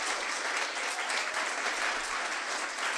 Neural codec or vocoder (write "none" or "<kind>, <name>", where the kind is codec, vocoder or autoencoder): none